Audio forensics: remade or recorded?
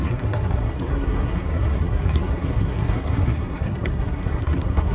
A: remade